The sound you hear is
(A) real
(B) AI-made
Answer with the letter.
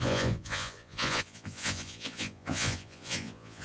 B